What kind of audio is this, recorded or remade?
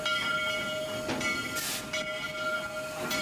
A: remade